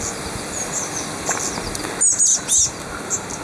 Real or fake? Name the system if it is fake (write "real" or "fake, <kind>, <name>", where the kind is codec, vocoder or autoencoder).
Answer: real